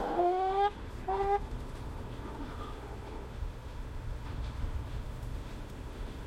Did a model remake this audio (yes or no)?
yes